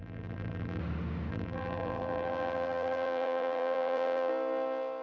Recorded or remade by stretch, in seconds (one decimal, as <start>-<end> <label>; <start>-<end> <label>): 0.0-0.8 remade; 0.8-1.3 recorded; 1.3-4.3 remade; 4.3-5.0 recorded